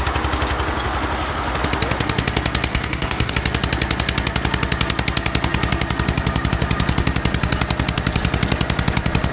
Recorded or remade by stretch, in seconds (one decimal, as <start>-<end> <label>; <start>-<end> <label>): 0.0-2.7 recorded; 2.7-3.3 remade; 3.3-9.3 recorded